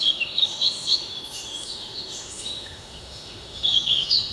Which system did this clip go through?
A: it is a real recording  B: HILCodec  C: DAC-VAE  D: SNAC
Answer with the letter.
C